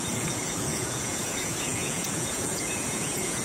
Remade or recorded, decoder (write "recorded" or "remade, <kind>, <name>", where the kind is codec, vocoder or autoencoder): remade, vocoder, Vocos